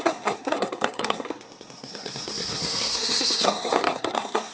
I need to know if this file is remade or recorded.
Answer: remade